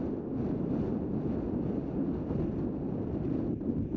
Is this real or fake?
real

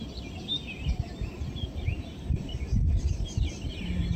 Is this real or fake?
real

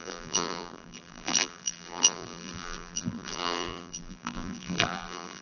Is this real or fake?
fake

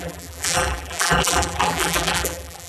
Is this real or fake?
fake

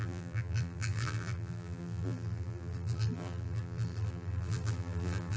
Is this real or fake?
fake